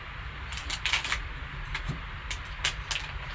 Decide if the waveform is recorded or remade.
recorded